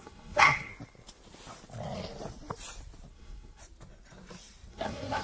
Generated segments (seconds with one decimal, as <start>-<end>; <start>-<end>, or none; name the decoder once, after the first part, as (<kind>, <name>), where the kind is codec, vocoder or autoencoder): 0.0-0.7 (codec, SNAC); 3.1-3.6; 4.7-5.2